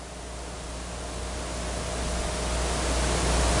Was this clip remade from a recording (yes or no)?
no